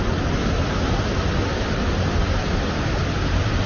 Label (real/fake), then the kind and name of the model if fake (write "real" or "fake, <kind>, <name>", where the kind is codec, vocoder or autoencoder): real